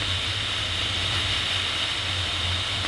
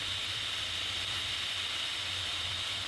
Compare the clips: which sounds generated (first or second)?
second